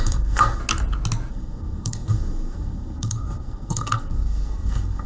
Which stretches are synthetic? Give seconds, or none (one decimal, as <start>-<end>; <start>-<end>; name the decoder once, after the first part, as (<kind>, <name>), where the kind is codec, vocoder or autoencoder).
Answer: 0.0-0.6 (codec, SNAC); 1.3-5.1